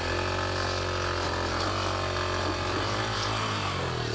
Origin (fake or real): real